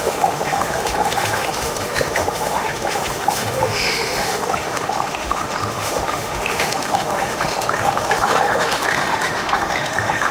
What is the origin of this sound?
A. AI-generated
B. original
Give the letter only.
A